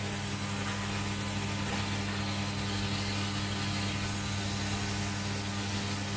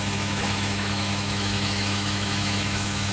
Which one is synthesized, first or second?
second